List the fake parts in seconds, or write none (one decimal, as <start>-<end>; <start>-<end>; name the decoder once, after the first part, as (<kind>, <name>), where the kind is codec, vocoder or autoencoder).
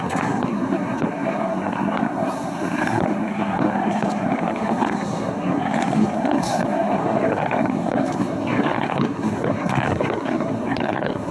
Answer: 0.0-11.3 (codec, SNAC)